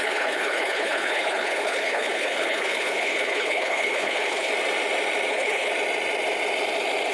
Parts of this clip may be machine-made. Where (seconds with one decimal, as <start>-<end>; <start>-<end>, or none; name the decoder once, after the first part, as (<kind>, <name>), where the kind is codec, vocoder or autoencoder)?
0.0-4.5 (codec, HILCodec); 5.3-5.7

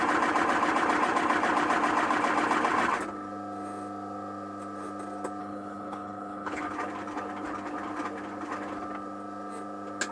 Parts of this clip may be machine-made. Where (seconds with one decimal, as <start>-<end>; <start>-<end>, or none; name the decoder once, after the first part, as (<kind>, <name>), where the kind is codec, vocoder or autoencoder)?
5.4-6.6 (codec, HILCodec)

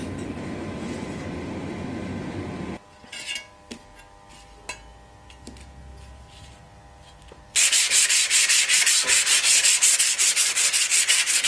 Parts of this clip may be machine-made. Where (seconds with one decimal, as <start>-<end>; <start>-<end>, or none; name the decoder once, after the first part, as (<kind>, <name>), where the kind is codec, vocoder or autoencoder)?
none

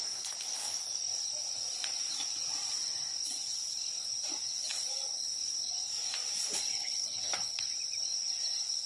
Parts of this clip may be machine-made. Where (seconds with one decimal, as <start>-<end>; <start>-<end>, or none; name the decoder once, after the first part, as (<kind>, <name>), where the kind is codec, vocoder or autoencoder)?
6.7-7.6 (codec, HILCodec)

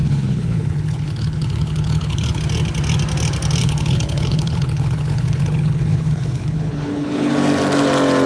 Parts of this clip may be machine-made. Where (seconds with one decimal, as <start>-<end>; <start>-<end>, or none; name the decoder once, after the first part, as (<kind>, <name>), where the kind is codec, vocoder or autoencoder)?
0.0-2.4 (codec, HILCodec); 3.6-7.3

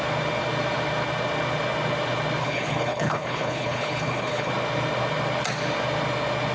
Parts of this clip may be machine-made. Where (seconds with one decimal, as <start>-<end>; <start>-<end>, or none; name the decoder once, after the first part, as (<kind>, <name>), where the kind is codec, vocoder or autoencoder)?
2.4-4.5 (codec, HILCodec)

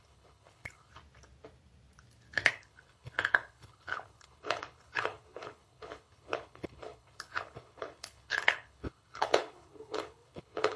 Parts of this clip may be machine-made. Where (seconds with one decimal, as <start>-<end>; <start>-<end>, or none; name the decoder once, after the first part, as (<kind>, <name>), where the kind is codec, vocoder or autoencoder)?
0.0-0.9 (codec, HILCodec); 2.5-10.8

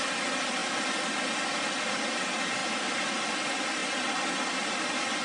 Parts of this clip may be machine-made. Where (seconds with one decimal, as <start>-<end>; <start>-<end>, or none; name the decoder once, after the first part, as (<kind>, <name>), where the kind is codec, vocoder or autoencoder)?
none